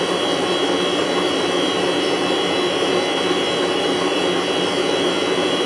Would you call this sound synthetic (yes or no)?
no